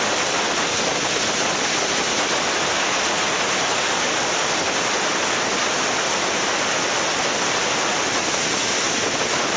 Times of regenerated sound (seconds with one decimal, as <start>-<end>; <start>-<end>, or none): none